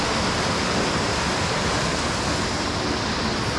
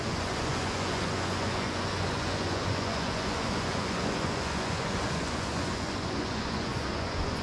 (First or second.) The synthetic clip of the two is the second